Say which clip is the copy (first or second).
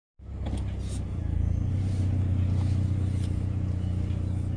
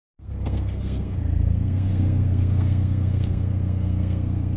second